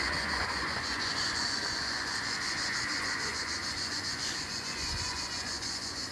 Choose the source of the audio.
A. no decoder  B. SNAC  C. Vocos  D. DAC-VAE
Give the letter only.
C